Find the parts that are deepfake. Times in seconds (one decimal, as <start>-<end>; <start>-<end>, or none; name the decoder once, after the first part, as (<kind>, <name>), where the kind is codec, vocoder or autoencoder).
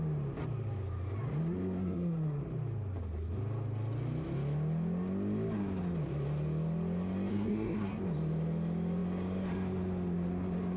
1.8-2.4 (codec, SNAC); 7.3-8.0